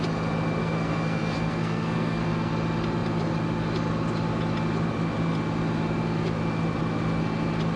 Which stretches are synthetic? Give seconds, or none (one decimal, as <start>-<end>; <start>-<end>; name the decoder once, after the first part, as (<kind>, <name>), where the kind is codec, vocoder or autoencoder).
0.6-2.5 (codec, SNAC)